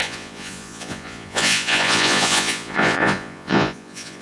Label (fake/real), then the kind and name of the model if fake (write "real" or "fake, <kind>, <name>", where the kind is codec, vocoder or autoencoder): fake, vocoder, Vocos